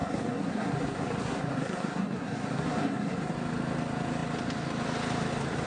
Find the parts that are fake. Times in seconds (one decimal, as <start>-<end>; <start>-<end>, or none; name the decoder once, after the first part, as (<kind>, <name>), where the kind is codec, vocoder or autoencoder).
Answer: 0.0-3.3 (codec, SNAC)